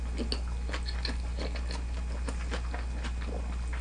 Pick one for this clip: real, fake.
real